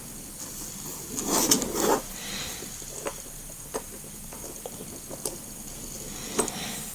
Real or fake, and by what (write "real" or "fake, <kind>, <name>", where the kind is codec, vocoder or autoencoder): real